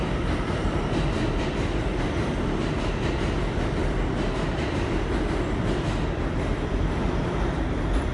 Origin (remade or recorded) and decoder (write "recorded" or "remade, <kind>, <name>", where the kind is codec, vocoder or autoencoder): recorded